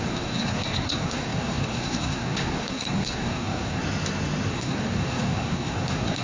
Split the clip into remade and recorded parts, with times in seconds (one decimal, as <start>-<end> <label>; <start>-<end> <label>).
0.0-3.8 remade; 3.8-4.5 recorded; 4.5-6.2 remade